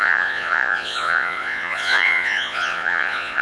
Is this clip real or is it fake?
fake